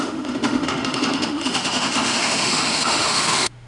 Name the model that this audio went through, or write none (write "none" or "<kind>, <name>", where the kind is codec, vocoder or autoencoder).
autoencoder, DAC-VAE